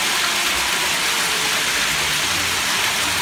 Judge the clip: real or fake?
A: real